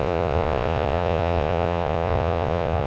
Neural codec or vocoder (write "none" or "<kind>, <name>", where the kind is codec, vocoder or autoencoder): vocoder, Vocos